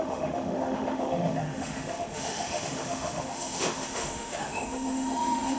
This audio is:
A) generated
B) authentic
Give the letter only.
A